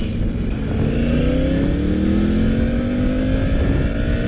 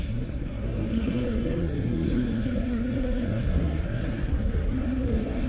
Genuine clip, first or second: first